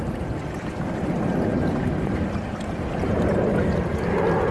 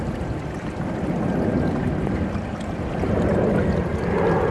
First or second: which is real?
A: first